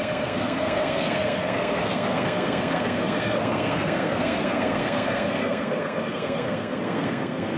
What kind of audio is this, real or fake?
fake